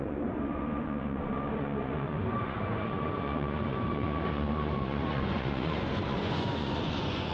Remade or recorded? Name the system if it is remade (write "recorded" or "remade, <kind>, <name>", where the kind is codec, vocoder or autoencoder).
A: remade, vocoder, Vocos